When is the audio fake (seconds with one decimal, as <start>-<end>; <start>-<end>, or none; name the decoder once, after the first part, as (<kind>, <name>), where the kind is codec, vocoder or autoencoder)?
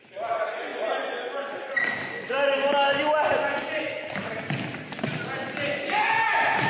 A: none